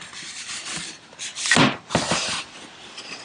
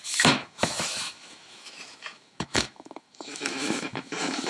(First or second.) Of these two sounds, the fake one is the second